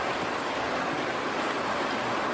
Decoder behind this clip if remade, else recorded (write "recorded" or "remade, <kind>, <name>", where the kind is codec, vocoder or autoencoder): recorded